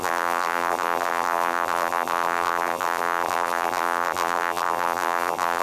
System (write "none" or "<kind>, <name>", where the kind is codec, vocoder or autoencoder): vocoder, BigVGAN v2